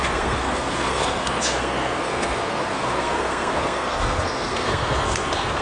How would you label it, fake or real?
fake